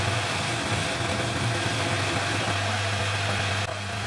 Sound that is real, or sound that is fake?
real